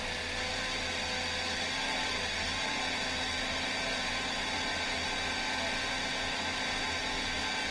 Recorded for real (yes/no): yes